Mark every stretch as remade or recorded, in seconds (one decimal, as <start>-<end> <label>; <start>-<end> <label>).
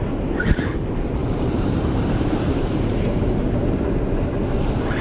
0.0-1.2 recorded; 1.2-3.2 remade; 3.2-5.0 recorded